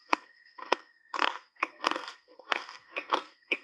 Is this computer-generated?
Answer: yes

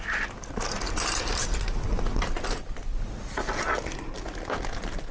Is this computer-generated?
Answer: no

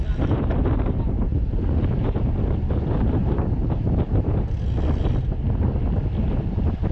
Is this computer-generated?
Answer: no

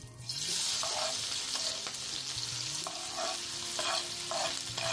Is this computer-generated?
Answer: no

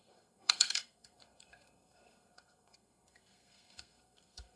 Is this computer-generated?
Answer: yes